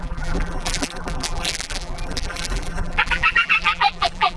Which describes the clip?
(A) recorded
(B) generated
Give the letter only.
B